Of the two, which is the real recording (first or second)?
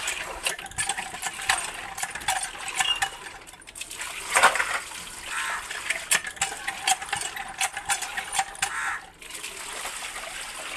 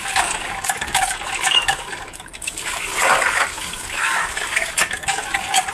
first